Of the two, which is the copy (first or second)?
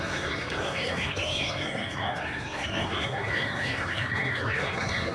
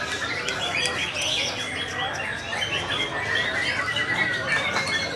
first